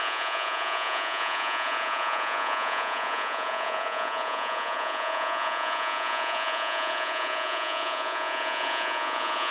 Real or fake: fake